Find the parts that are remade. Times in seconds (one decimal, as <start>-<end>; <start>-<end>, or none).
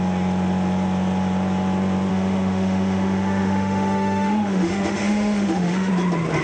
2.1-5.9